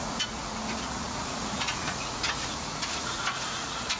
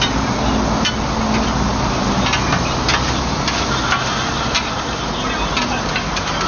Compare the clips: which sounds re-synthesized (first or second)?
first